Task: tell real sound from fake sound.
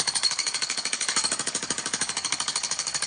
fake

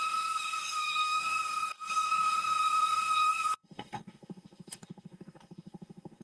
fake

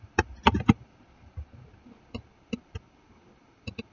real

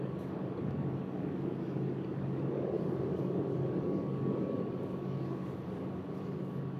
fake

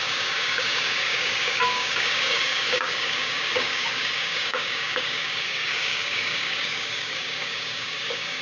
fake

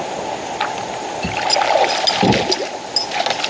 real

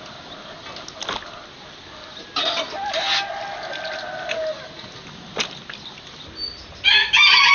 real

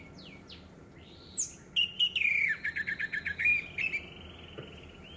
real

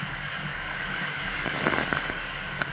fake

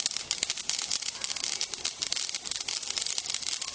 real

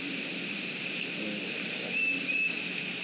real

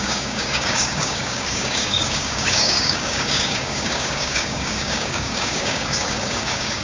fake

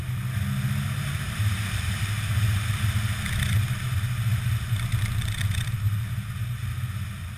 real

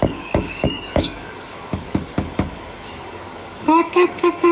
fake